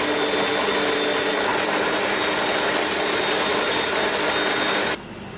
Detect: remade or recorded recorded